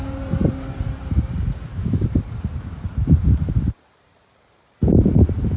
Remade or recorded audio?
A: remade